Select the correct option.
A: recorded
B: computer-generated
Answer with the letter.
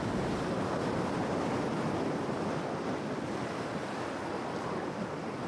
A